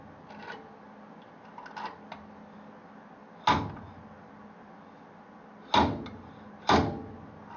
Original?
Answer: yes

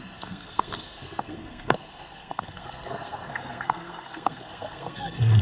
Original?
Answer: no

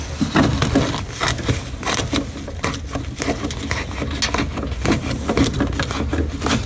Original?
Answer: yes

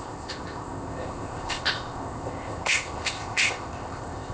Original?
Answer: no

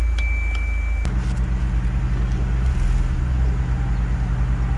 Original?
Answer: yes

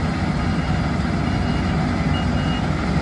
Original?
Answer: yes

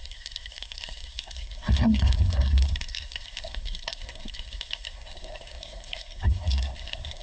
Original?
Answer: no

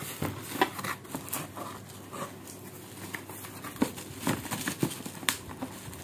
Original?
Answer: yes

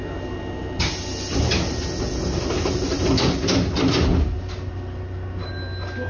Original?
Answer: yes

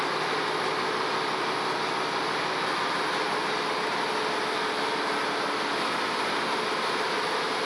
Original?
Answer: yes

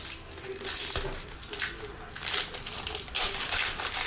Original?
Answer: yes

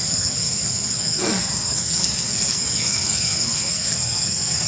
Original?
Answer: no